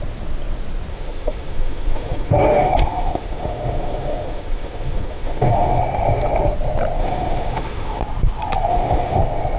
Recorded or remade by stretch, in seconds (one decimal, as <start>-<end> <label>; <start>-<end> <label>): 0.0-0.9 recorded; 0.9-5.8 remade; 5.8-7.0 recorded; 7.0-8.0 remade; 8.0-8.7 recorded; 8.7-9.2 remade; 9.2-9.6 recorded